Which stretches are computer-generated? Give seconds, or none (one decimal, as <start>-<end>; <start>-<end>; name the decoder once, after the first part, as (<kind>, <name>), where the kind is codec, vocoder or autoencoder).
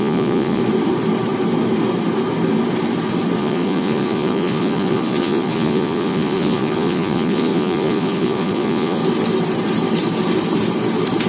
0.0-0.6 (vocoder, Vocos); 3.4-9.0